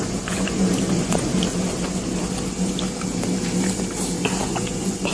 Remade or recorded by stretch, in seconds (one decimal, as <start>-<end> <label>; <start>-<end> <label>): 0.0-1.3 remade; 1.3-4.4 recorded; 4.4-5.1 remade

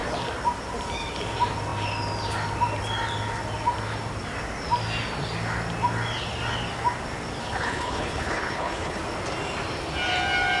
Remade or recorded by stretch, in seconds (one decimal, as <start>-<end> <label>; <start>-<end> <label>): 0.0-7.4 recorded; 7.4-9.0 remade; 9.0-10.6 recorded

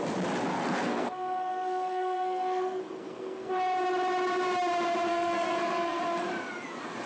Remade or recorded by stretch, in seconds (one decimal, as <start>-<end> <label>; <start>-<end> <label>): 0.0-0.5 recorded; 0.5-3.5 remade; 3.5-5.1 recorded; 5.1-6.0 remade; 6.0-7.1 recorded

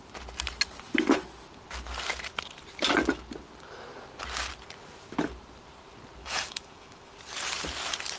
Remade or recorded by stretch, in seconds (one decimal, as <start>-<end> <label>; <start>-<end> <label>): 0.0-6.2 recorded; 6.2-7.1 remade; 7.1-8.2 recorded

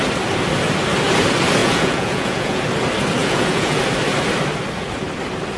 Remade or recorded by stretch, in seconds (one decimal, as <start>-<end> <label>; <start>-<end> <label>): 0.0-1.6 recorded; 1.6-2.6 remade; 2.6-3.2 recorded; 3.2-3.8 remade; 3.8-5.6 recorded